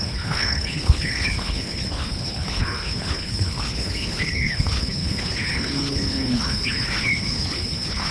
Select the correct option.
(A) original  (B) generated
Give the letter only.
B